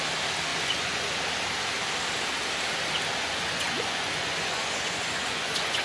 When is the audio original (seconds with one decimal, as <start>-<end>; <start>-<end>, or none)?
0.0-0.5; 1.2-3.1